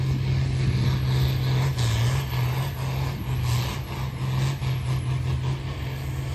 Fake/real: real